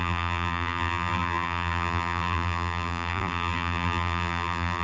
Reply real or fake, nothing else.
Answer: fake